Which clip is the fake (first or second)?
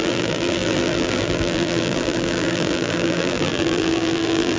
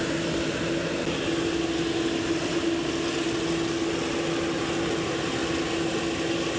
first